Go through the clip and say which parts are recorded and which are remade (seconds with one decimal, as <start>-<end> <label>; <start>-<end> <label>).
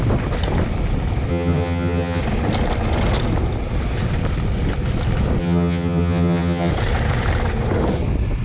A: 0.0-1.3 recorded; 1.3-2.2 remade; 2.2-5.4 recorded; 5.4-6.7 remade; 6.7-8.4 recorded